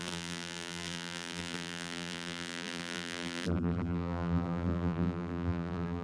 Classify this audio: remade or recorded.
remade